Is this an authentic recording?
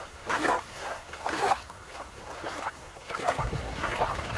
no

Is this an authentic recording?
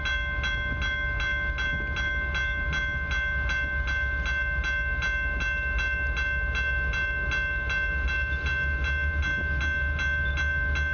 yes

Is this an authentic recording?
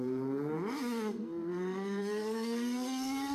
no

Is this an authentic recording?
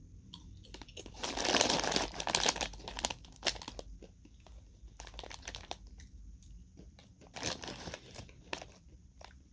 no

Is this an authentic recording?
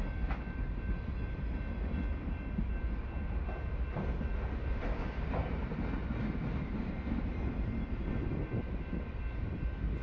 yes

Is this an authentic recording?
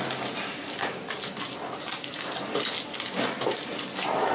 yes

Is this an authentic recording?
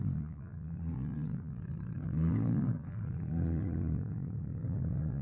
no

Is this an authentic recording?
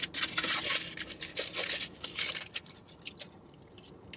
yes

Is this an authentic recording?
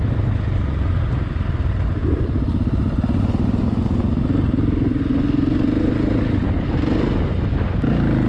yes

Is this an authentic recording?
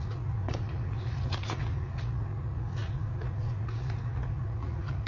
no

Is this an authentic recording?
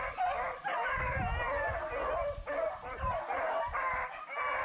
yes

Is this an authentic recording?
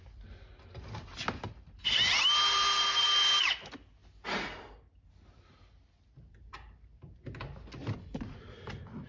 yes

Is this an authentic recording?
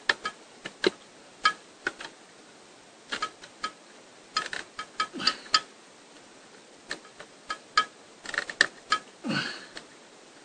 yes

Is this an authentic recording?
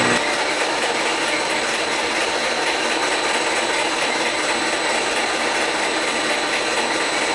yes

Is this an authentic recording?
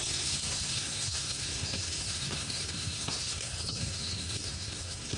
no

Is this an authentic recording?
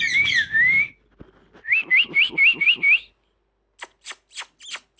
yes